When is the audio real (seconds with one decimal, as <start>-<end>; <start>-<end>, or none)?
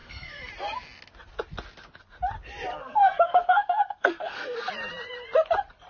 0.5-2.7; 4.7-5.9